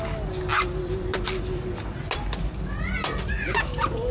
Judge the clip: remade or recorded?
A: recorded